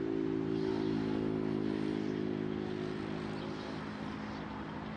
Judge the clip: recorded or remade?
recorded